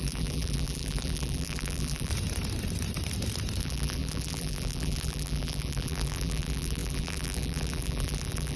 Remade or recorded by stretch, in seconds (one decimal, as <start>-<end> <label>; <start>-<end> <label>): 0.0-2.1 remade; 2.1-3.6 recorded; 3.6-8.6 remade